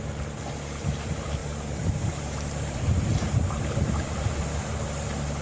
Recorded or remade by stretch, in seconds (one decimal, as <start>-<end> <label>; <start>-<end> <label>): 0.0-1.4 recorded; 1.4-4.6 remade; 4.6-5.4 recorded